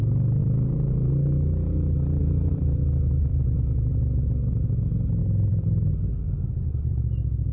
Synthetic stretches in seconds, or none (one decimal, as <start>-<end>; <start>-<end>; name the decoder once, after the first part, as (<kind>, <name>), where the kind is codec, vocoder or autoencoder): 0.4-1.1 (vocoder, Vocos); 2.2-2.8; 3.3-3.9; 5.2-5.9